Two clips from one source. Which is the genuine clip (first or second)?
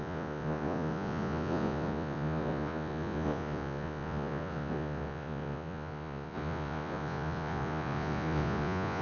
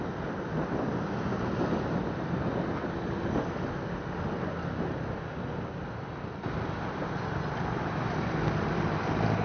second